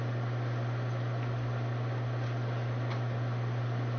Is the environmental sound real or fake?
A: real